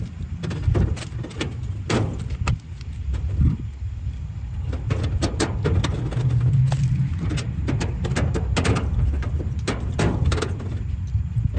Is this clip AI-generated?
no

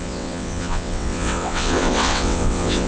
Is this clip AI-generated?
yes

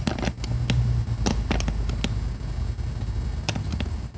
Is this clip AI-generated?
no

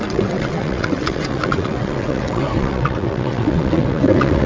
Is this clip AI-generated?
yes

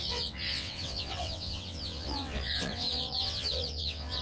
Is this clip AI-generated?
yes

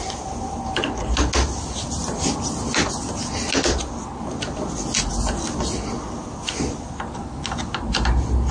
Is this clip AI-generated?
no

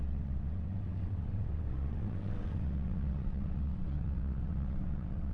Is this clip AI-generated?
yes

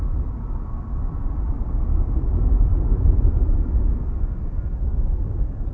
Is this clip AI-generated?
no